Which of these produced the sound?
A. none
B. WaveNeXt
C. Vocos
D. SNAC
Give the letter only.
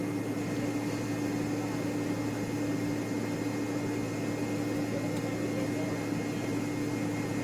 A